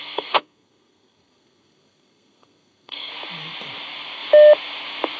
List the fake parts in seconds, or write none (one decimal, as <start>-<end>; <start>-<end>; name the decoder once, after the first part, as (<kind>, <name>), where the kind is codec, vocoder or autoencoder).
0.0-3.1 (codec, SNAC)